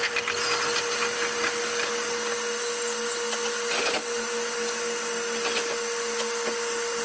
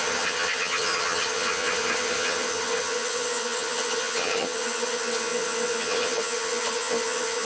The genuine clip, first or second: first